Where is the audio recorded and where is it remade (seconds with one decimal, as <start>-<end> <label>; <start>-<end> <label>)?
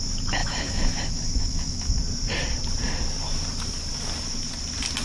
0.0-0.4 recorded; 0.4-1.9 remade; 1.9-5.0 recorded